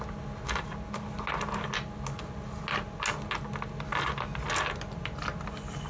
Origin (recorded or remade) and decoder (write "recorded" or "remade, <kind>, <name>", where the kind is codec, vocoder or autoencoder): recorded